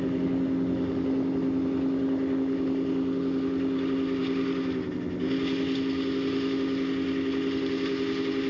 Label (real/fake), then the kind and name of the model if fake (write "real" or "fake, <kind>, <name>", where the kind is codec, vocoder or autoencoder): real